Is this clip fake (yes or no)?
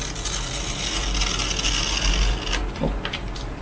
no